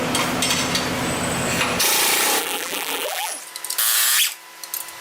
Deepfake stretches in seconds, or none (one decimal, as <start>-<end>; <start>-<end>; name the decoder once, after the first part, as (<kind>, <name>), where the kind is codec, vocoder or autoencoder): 2.4-3.3 (vocoder, BigVGAN v2)

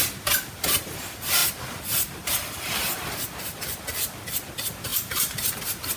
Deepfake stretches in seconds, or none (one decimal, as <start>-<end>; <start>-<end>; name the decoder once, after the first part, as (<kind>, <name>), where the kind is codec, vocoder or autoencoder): 4.9-5.6 (vocoder, BigVGAN v2)

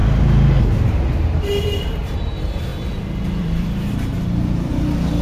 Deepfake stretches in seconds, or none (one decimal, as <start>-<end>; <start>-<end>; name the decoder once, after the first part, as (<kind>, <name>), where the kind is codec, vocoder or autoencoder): 0.6-2.7 (vocoder, BigVGAN v2); 3.4-5.2

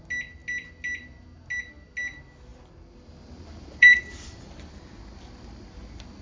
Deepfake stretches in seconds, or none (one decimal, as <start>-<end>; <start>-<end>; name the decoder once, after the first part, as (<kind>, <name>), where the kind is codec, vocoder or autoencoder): 2.5-4.7 (vocoder, BigVGAN v2)

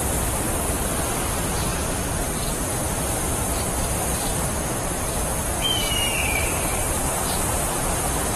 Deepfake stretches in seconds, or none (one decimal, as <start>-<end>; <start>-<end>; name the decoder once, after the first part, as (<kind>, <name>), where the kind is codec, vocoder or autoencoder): 0.0-2.7 (vocoder, BigVGAN v2); 3.4-8.4

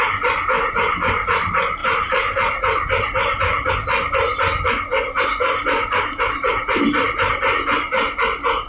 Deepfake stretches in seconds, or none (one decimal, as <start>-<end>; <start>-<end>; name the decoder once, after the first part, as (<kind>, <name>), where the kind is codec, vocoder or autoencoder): 1.8-3.7 (vocoder, BigVGAN v2); 4.9-7.4

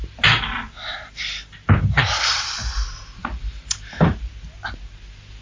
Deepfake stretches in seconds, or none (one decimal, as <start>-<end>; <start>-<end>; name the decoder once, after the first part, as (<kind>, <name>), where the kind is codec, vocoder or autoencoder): 0.9-4.1 (vocoder, BigVGAN v2)